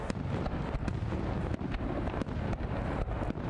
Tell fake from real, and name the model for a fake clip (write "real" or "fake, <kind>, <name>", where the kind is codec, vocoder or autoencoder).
real